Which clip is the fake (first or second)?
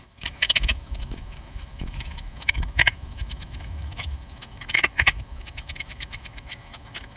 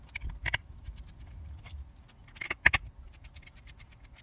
first